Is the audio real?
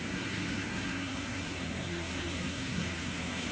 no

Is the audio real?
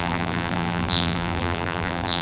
no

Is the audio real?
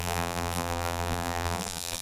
no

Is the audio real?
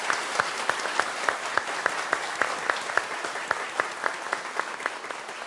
yes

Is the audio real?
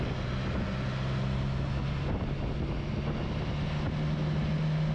yes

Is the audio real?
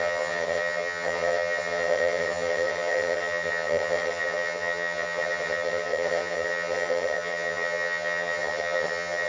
no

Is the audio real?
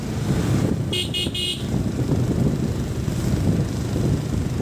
yes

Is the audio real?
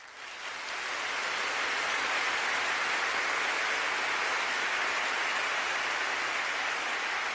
yes